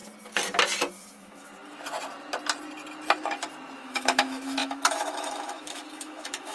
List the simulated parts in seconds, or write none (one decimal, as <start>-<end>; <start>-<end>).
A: 0.9-1.5; 3.8-6.5